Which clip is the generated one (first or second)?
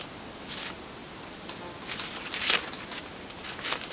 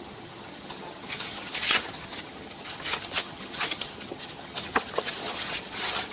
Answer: second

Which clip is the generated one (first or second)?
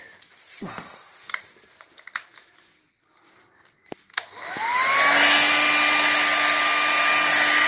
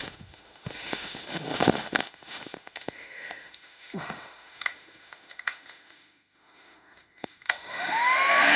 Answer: second